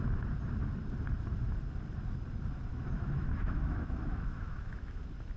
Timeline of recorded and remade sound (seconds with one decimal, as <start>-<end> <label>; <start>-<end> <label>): 0.0-2.7 recorded; 2.7-5.0 remade; 5.0-5.4 recorded